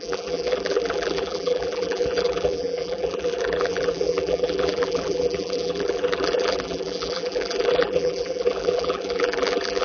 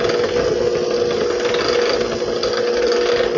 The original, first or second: second